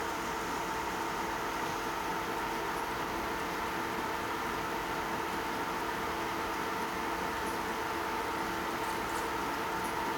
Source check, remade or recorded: recorded